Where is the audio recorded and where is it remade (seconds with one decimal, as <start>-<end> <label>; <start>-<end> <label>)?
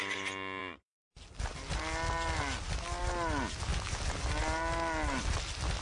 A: 0.0-5.8 recorded